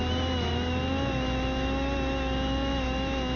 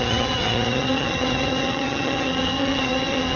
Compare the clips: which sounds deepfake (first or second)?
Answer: second